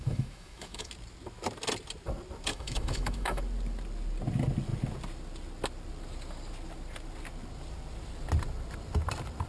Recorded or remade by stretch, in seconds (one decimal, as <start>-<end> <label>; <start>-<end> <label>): 0.0-0.9 remade; 0.9-2.5 recorded; 2.5-3.4 remade; 3.4-9.5 recorded